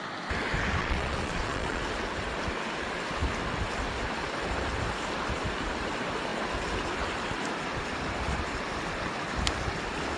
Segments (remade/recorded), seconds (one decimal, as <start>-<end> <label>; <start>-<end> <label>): 0.0-0.8 recorded; 0.8-1.8 remade; 1.8-10.2 recorded